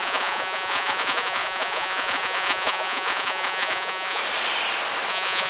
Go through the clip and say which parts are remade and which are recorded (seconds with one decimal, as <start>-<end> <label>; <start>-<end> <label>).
0.0-4.2 remade; 4.2-5.1 recorded; 5.1-5.5 remade